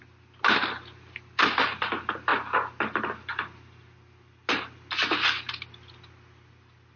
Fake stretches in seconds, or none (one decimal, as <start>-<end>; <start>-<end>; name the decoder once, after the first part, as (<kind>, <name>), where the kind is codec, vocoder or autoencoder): none